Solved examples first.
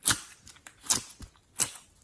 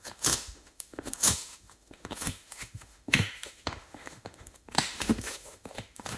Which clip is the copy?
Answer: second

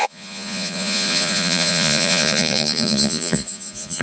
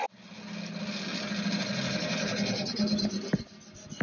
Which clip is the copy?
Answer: first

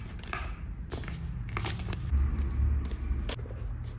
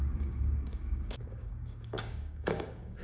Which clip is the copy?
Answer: second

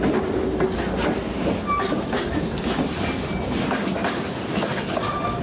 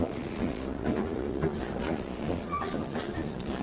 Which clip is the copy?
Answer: second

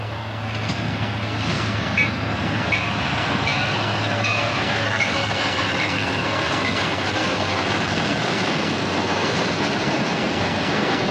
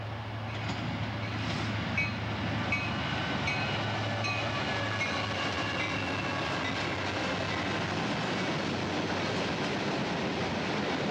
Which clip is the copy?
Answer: first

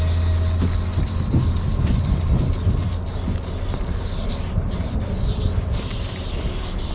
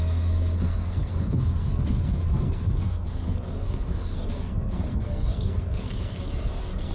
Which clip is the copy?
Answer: second